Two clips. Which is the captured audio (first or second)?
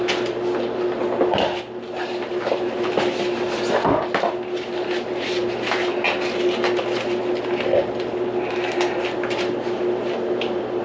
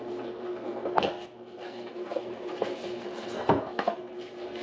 first